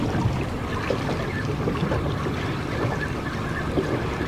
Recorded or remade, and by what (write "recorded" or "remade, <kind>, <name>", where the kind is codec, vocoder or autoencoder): remade, vocoder, BigVGAN v2